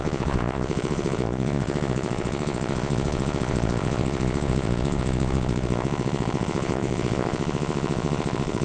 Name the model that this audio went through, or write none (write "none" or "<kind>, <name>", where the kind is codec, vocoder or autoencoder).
vocoder, Vocos